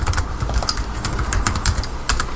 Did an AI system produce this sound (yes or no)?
no